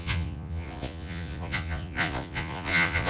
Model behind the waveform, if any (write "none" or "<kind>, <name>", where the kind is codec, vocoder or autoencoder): vocoder, Vocos